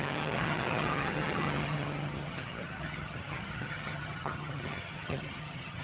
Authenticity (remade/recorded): remade